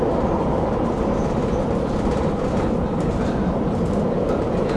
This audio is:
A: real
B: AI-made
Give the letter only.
A